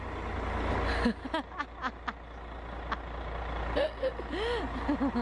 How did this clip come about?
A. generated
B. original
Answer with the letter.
B